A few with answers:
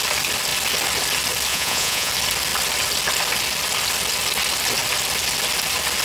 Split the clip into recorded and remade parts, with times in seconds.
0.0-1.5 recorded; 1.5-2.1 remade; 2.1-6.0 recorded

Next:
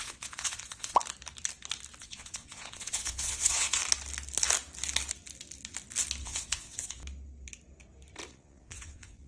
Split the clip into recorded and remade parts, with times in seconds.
0.0-1.0 remade; 1.0-2.0 recorded; 2.0-3.8 remade; 3.8-6.2 recorded; 6.2-7.0 remade; 7.0-8.3 recorded; 8.3-9.3 remade

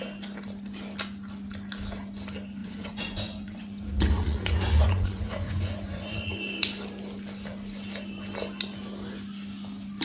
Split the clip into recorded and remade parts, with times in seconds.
0.0-2.6 recorded; 2.6-6.3 remade; 6.3-10.0 recorded